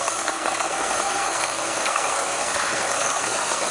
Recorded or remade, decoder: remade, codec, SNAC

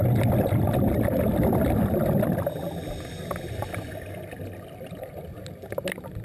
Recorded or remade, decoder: recorded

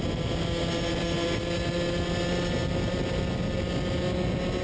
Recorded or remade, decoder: recorded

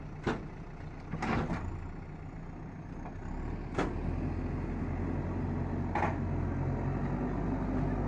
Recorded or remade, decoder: recorded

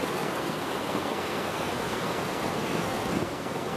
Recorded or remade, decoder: remade, codec, SNAC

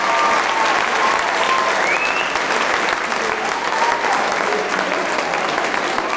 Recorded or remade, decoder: recorded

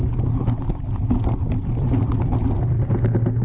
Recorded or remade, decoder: recorded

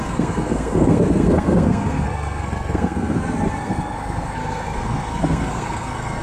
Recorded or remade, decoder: remade, codec, SNAC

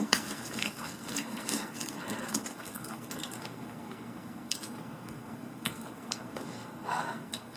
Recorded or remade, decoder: remade, codec, SNAC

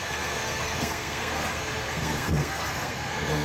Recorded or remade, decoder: remade, codec, SNAC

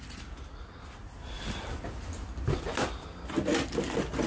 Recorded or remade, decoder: recorded